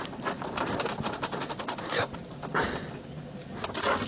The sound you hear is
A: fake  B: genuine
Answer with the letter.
B